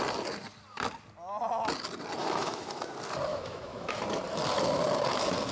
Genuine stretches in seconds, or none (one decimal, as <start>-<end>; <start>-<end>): 0.0-2.2; 2.8-3.3; 3.9-5.5